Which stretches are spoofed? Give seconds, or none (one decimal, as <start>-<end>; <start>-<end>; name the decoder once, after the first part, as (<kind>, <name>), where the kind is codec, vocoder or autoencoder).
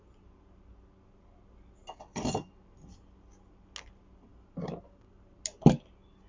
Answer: none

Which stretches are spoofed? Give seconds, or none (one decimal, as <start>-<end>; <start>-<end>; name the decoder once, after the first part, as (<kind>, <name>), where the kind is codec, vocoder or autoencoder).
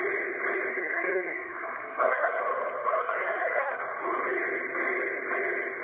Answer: 0.7-2.4 (codec, SNAC); 3.0-3.8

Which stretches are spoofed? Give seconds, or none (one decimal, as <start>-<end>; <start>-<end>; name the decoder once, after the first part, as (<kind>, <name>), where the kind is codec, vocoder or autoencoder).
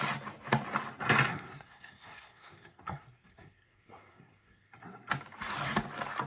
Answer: 1.3-5.1 (codec, SNAC)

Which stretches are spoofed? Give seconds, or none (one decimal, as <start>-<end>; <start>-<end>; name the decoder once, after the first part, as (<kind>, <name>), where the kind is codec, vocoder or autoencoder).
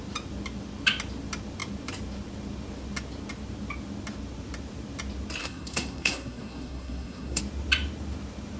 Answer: 5.4-7.4 (codec, SNAC)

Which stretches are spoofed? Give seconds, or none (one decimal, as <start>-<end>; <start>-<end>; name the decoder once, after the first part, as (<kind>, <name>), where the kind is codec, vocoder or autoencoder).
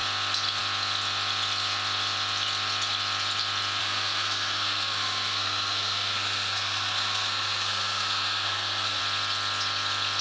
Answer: 3.8-9.0 (codec, SNAC)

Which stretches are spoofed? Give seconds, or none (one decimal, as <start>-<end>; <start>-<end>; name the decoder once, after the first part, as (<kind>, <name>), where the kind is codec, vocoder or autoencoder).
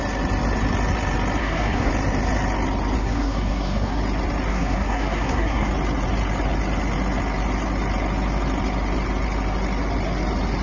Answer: 1.4-1.9 (codec, SNAC); 3.0-4.0; 4.5-5.7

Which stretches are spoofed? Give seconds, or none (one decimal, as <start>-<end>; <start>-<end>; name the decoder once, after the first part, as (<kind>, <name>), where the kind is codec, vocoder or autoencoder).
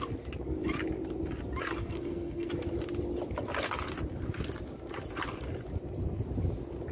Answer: 1.8-2.5 (codec, SNAC)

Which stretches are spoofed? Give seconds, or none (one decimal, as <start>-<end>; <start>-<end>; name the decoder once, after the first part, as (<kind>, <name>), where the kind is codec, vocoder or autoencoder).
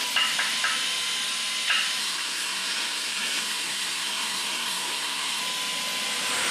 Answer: 2.0-5.4 (codec, SNAC)